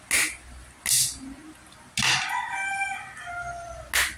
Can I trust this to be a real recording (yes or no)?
yes